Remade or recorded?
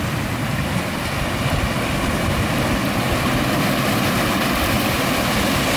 recorded